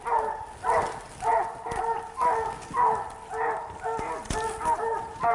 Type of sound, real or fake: real